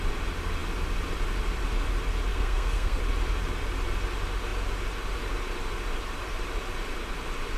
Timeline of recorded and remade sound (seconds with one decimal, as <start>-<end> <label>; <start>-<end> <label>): 0.0-2.3 recorded; 2.3-3.0 remade; 3.0-7.6 recorded